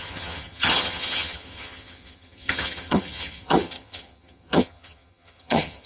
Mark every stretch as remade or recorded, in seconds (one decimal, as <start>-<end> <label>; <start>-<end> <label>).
0.0-5.9 remade